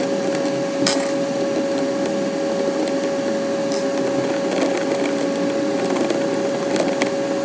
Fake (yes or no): no